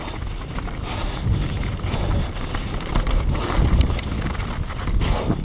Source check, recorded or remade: recorded